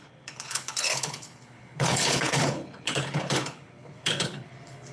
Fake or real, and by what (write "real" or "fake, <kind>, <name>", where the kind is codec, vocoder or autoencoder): fake, codec, HILCodec